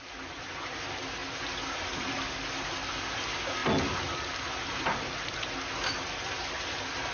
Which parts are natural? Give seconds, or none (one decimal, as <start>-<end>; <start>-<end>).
0.0-7.1